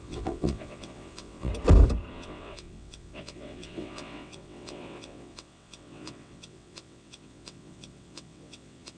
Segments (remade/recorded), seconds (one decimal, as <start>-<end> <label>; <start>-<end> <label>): 0.0-1.5 remade; 1.5-2.1 recorded; 2.1-9.0 remade